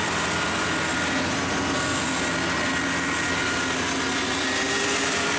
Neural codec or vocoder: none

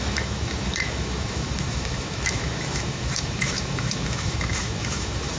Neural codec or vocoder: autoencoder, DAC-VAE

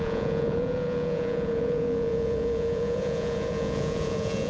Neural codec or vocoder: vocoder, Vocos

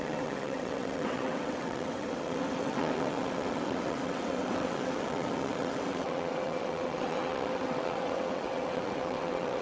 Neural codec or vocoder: vocoder, WaveNeXt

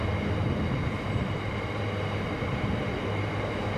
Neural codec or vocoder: none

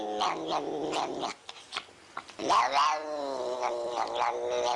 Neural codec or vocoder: none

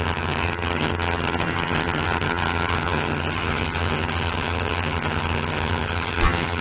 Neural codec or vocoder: vocoder, HiFi-GAN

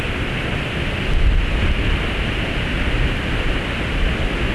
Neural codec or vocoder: none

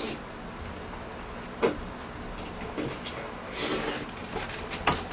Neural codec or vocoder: none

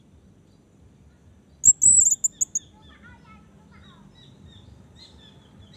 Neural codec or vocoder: none